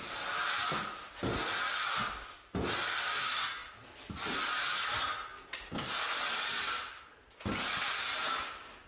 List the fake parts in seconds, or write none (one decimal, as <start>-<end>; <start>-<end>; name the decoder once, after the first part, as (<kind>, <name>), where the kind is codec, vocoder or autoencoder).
none